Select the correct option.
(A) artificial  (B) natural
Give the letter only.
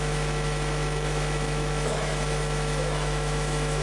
A